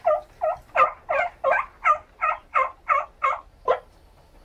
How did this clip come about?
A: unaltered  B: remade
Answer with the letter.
A